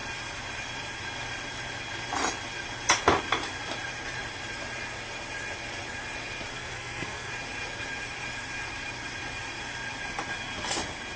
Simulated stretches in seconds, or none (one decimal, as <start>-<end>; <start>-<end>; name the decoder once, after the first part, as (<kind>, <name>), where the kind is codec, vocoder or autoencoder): 6.5-7.3 (codec, SNAC)